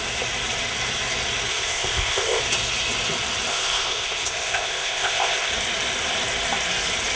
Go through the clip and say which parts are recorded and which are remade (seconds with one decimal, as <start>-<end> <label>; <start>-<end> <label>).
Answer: 0.0-1.5 recorded; 1.5-2.4 remade; 2.4-3.5 recorded; 3.5-5.5 remade; 5.5-7.2 recorded